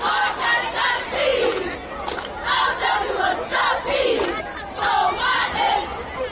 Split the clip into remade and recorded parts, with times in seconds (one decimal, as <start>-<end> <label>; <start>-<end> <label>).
0.0-6.3 recorded